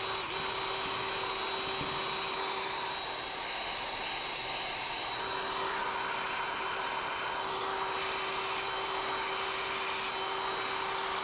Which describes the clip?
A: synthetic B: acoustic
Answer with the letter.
B